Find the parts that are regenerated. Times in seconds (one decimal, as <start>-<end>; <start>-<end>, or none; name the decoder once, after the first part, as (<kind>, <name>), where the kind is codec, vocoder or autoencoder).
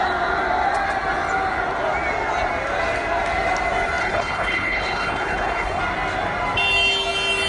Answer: 4.0-5.8 (codec, HILCodec)